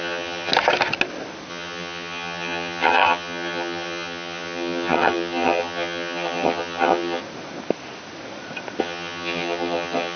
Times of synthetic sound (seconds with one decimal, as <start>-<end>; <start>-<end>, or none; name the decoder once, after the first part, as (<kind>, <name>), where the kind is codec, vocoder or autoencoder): 0.0-0.5 (vocoder, HiFi-GAN); 1.5-7.2; 8.8-10.2